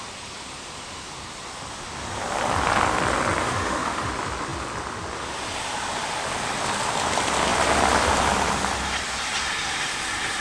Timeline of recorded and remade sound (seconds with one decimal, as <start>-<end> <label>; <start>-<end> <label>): 0.0-3.4 recorded; 3.4-4.1 remade; 4.1-10.4 recorded